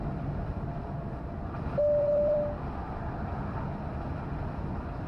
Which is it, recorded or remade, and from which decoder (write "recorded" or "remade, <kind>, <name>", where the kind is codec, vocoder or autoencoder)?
remade, vocoder, BigVGAN v2